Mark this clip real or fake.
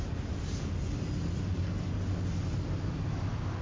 real